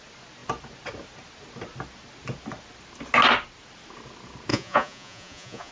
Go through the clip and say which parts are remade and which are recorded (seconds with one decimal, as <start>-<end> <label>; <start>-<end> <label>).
0.0-4.5 recorded; 4.5-5.7 remade